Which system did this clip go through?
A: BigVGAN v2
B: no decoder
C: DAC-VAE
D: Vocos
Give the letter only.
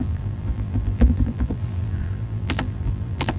A